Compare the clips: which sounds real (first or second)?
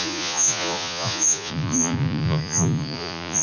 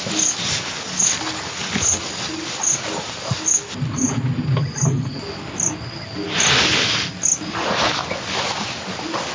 second